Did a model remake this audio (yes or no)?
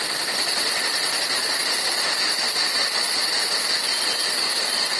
no